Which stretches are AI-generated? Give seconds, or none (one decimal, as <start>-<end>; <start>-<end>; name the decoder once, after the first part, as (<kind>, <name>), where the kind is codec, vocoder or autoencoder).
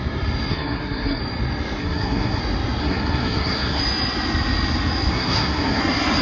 0.5-1.2 (codec, SNAC); 1.8-2.4; 2.8-3.8; 5.1-5.8